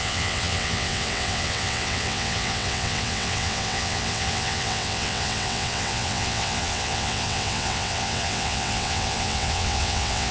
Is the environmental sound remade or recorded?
remade